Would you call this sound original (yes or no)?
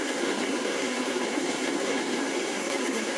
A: no